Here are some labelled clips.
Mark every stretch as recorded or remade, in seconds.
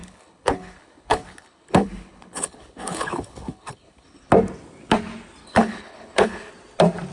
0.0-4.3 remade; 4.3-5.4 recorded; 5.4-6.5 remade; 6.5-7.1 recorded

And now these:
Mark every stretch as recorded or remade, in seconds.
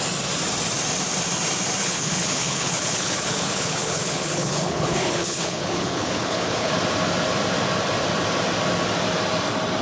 0.0-1.8 recorded; 1.8-6.7 remade; 6.7-9.8 recorded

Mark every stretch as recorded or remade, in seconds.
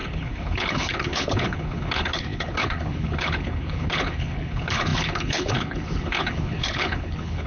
0.0-7.5 remade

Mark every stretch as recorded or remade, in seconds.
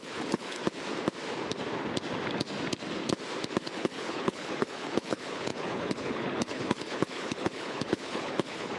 0.0-0.6 remade; 0.6-3.6 recorded; 3.6-8.8 remade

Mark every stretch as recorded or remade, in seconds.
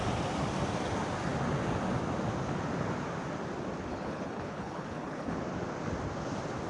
0.0-3.9 recorded; 3.9-5.4 remade; 5.4-6.7 recorded